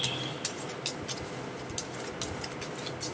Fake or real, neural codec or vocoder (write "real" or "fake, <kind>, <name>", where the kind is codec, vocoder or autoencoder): real